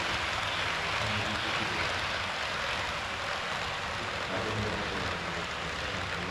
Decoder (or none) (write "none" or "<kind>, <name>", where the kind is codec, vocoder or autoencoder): none